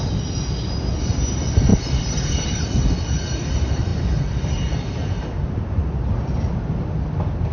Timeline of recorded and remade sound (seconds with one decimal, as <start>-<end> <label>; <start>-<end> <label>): 0.0-1.7 recorded; 1.7-2.7 remade; 2.7-7.5 recorded